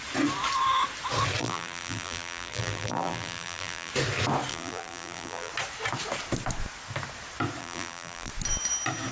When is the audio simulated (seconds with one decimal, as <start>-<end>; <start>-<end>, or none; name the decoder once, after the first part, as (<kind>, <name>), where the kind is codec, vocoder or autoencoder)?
1.4-3.9 (vocoder, BigVGAN v2); 4.5-5.5; 7.6-8.3

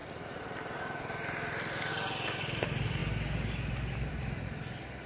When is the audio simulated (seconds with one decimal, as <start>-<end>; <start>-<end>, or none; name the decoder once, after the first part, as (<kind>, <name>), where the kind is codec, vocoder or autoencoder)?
0.0-1.9 (vocoder, BigVGAN v2)

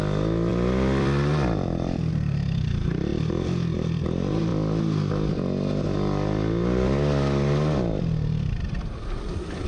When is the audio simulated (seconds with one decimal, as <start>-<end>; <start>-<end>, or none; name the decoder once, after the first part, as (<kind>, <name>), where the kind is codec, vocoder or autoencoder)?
0.0-4.5 (vocoder, BigVGAN v2); 9.2-9.7

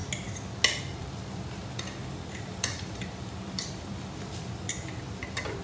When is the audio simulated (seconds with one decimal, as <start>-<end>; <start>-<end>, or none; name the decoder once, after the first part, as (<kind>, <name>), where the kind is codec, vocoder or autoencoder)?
0.8-5.6 (vocoder, BigVGAN v2)

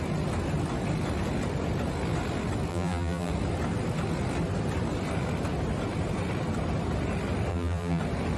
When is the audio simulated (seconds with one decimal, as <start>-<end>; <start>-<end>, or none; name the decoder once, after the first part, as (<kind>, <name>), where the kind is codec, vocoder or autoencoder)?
2.7-3.3 (vocoder, BigVGAN v2); 7.5-8.0